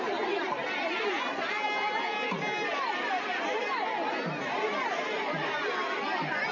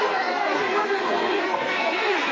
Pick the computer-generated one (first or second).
second